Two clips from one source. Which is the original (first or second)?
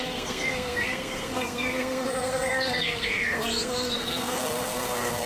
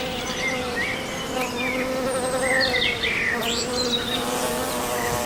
second